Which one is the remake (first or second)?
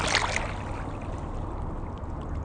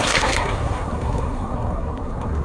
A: second